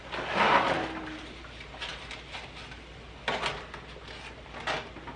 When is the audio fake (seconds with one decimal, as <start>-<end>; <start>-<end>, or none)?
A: none